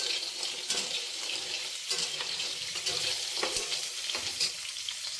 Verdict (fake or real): fake